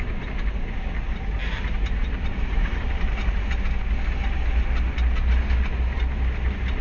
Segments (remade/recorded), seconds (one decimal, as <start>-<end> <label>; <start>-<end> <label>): 0.0-1.4 recorded; 1.4-3.5 remade; 3.5-6.8 recorded